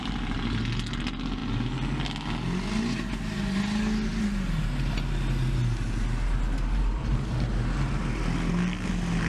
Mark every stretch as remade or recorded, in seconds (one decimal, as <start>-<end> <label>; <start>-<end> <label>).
0.0-9.3 recorded